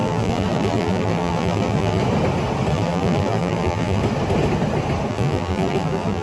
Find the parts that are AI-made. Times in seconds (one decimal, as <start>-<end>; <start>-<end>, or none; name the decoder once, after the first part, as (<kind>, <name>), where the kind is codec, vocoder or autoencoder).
0.0-2.0 (vocoder, BigVGAN v2); 2.7-4.0; 5.1-6.2